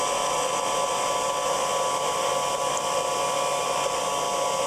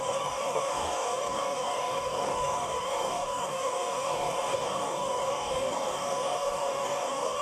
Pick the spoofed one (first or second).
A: second